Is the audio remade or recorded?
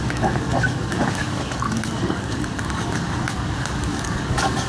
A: remade